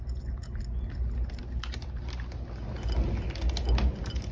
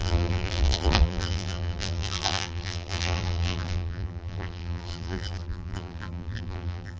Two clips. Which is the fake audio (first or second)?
second